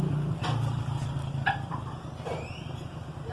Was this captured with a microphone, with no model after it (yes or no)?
yes